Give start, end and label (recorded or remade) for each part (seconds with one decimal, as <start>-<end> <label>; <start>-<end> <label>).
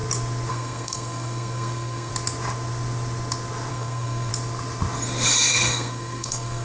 0.0-0.5 recorded; 0.5-2.1 remade; 2.1-3.7 recorded; 3.7-4.3 remade; 4.3-5.5 recorded; 5.5-6.6 remade